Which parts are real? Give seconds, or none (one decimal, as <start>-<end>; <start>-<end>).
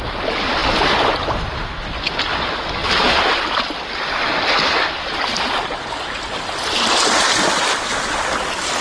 0.0-8.8